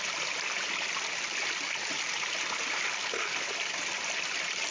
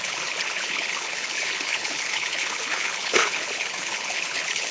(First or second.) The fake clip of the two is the second